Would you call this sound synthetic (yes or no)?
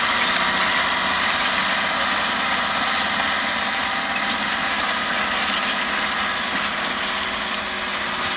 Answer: no